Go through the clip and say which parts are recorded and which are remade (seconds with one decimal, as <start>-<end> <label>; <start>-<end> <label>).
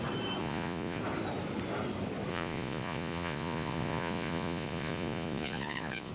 0.0-0.4 recorded; 0.4-1.0 remade; 1.0-2.3 recorded; 2.3-6.1 remade